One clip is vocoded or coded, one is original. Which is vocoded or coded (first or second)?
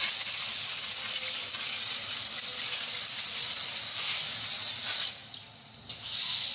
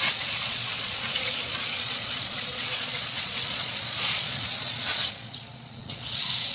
second